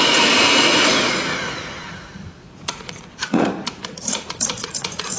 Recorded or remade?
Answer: remade